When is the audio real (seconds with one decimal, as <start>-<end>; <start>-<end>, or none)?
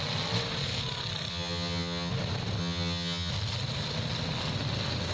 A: 0.0-1.3; 2.1-2.6; 3.3-5.1